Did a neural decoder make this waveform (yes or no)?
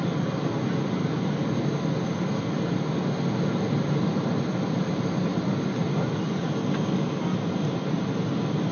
no